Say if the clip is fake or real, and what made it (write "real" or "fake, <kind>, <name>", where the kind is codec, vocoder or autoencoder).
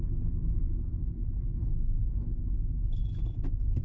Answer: real